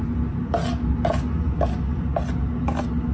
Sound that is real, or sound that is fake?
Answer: real